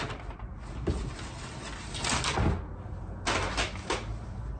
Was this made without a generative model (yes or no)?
yes